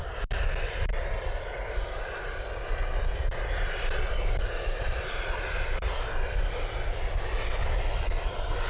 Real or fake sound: real